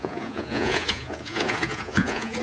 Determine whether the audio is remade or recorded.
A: remade